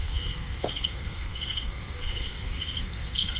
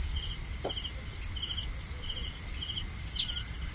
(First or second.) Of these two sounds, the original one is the second